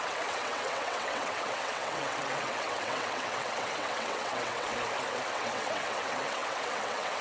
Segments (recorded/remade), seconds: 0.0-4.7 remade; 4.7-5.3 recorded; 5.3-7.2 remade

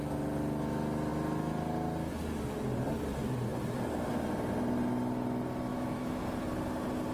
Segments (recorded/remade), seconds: 0.0-5.7 recorded; 5.7-6.2 remade; 6.2-7.1 recorded

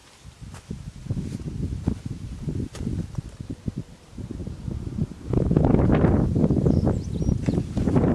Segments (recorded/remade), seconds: 0.0-8.1 recorded

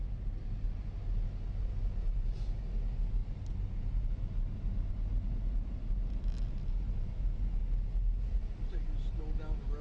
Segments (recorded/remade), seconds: 0.0-7.6 recorded; 7.6-9.2 remade; 9.2-9.8 recorded

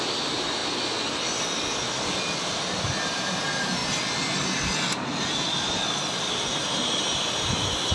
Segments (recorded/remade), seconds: 0.0-0.6 remade; 0.6-2.8 recorded; 2.8-3.8 remade; 3.8-6.3 recorded; 6.3-7.9 remade

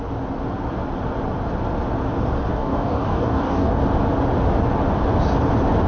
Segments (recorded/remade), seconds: 0.0-2.5 recorded; 2.5-3.8 remade; 3.8-5.9 recorded

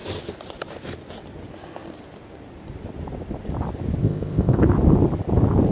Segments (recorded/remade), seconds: 0.0-4.0 recorded; 4.0-4.6 remade; 4.6-5.7 recorded